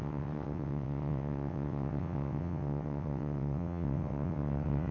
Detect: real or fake fake